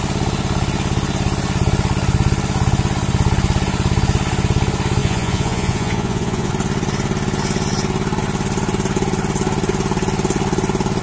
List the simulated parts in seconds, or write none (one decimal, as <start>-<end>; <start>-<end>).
5.0-6.5

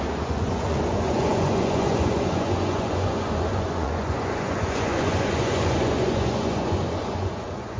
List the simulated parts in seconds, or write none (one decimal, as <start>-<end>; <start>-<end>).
0.0-7.8

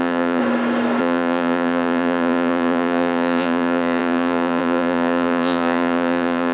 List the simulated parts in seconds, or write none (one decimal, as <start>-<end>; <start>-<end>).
0.0-0.4; 1.0-6.5

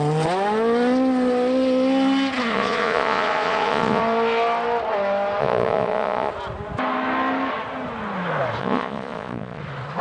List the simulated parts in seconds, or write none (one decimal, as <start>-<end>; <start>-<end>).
2.5-4.0; 5.4-6.3; 8.6-9.6